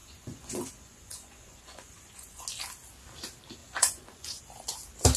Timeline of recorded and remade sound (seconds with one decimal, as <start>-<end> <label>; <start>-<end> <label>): 0.0-2.4 remade; 2.4-3.6 recorded; 3.6-4.4 remade; 4.4-5.2 recorded